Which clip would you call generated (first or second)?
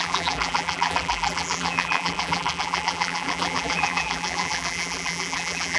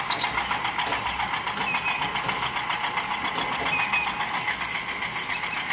first